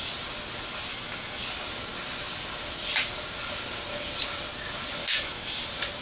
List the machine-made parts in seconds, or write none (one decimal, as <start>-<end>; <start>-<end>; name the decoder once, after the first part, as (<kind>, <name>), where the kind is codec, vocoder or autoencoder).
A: 0.9-1.4 (autoencoder, DAC-VAE); 5.0-5.6